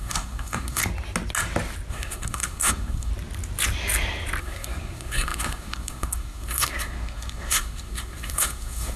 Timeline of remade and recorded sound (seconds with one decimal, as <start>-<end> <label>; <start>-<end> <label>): 0.0-0.8 remade; 0.8-1.9 recorded; 1.9-3.1 remade; 3.1-4.4 recorded; 4.4-9.0 remade